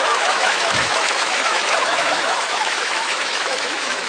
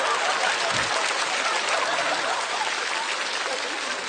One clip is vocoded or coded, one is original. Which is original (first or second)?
second